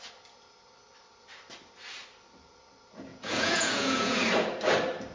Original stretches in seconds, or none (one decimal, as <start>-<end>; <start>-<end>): 0.0-3.1; 4.2-5.1